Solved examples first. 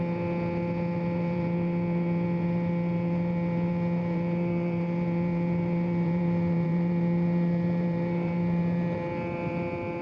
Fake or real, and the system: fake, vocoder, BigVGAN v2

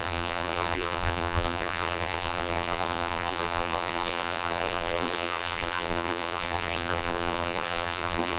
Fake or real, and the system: fake, vocoder, BigVGAN v2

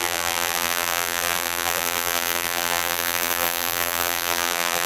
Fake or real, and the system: fake, vocoder, BigVGAN v2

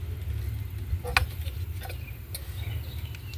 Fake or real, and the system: real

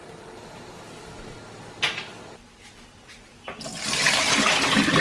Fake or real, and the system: real